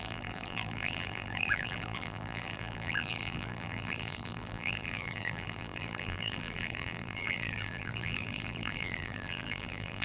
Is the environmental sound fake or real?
fake